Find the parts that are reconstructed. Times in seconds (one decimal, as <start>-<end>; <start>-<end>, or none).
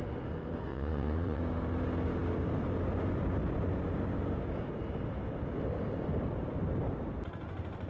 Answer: 0.7-1.4